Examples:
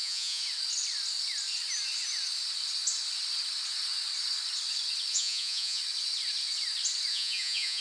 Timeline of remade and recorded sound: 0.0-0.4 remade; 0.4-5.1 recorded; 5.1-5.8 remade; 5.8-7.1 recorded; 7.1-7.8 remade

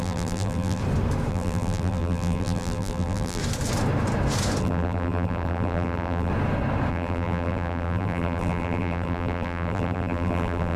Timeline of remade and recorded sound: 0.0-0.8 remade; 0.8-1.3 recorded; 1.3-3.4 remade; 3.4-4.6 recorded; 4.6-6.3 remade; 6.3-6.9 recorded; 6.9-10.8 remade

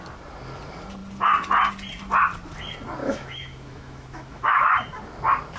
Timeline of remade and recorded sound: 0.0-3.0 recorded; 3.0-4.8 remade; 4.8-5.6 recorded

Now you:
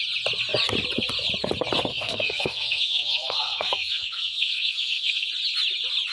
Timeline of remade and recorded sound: 0.0-1.9 recorded; 1.9-5.3 remade; 5.3-6.1 recorded

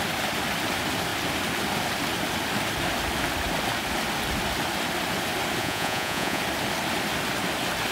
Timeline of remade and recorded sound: 0.0-5.6 recorded; 5.6-6.4 remade; 6.4-7.9 recorded

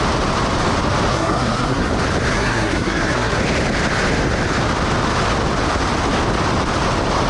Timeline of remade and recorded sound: 0.0-1.1 recorded; 1.1-1.9 remade; 1.9-2.3 recorded; 2.3-3.4 remade; 3.4-7.3 recorded